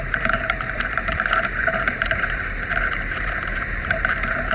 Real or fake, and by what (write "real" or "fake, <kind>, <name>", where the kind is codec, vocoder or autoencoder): fake, vocoder, BigVGAN v2